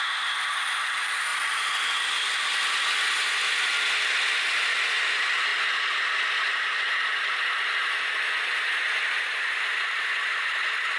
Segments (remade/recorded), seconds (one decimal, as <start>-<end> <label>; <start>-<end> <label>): 0.0-11.0 recorded